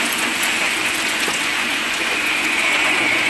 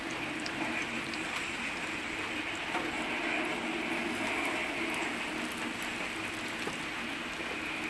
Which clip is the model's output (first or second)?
first